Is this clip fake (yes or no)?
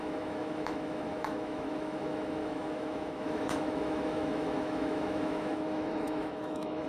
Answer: yes